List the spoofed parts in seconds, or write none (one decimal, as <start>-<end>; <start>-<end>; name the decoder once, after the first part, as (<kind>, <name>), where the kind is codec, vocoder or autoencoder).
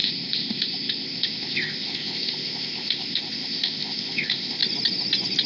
0.0-4.6 (codec, ZipCodec)